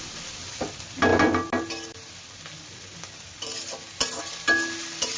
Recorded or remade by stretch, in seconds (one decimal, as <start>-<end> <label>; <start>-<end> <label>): 0.0-5.2 recorded